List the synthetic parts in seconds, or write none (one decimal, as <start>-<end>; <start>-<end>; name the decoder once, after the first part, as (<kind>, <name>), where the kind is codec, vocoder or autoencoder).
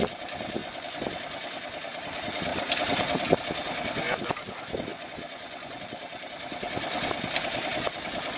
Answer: 0.6-1.1 (vocoder, Vocos); 4.9-5.8